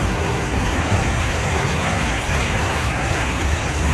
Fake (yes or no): yes